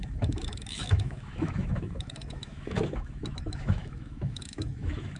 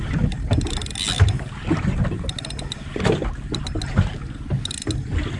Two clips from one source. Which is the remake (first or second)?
first